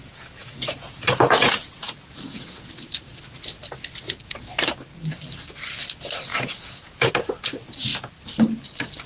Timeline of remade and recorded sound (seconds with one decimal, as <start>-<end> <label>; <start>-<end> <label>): 0.0-2.7 remade; 2.7-6.3 recorded; 6.3-7.1 remade; 7.1-9.1 recorded